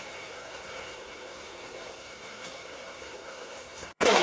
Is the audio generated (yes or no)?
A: yes